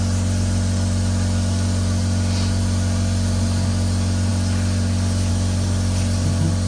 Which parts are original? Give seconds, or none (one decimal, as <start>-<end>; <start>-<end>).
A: 0.0-6.7